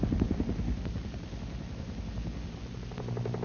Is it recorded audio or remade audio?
recorded